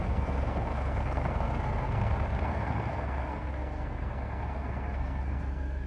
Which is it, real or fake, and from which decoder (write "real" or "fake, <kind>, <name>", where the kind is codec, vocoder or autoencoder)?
fake, codec, SNAC